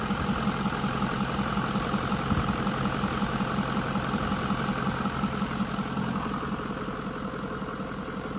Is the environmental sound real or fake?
real